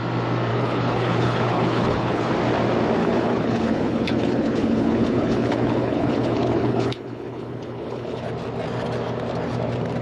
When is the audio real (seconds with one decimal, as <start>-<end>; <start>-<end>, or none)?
0.0-0.5; 2.3-3.0; 8.2-10.0